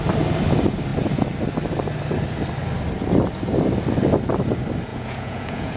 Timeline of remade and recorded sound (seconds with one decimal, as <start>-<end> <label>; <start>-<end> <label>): 0.0-4.9 recorded; 4.9-5.8 remade